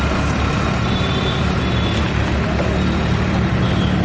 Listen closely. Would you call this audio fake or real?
real